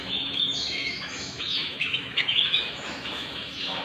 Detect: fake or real fake